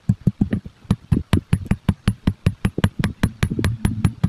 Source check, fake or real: real